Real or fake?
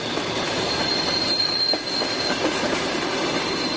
real